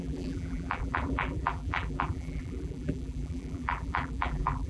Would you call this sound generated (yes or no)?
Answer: yes